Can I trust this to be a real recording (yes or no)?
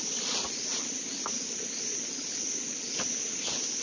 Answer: yes